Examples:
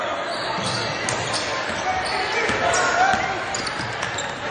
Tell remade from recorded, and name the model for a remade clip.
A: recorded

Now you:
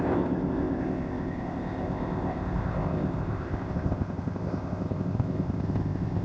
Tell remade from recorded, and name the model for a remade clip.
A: remade, codec, ZipCodec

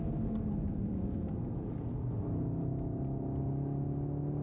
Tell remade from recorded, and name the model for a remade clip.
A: recorded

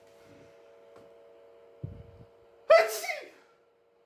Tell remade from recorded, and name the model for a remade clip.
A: recorded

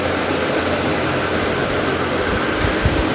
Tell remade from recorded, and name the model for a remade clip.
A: recorded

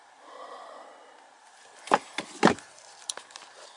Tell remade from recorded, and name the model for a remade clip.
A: recorded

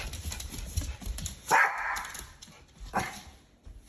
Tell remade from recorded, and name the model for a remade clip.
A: remade, vocoder, BigVGAN v2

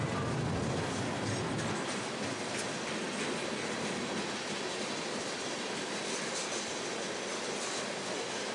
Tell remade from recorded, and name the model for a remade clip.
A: recorded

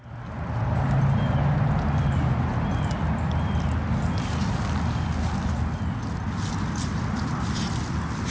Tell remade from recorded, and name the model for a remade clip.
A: recorded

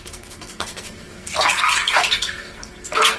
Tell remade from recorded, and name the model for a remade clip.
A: remade, codec, SNAC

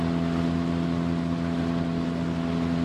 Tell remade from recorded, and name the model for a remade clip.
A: recorded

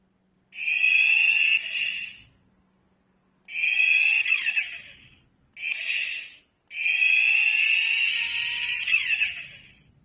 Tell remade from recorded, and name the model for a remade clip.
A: recorded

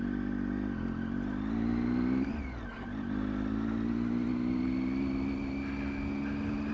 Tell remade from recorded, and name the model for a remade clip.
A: recorded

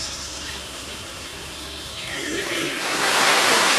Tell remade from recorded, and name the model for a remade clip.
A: remade, codec, SNAC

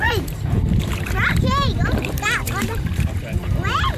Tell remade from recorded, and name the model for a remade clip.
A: remade, vocoder, BigVGAN v2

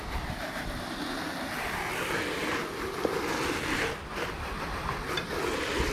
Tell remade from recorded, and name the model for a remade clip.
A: recorded